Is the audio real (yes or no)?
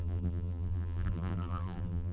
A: no